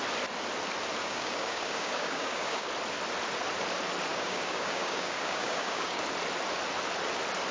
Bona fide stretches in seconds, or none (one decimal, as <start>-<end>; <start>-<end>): 0.0-1.0; 2.7-4.1; 6.0-7.5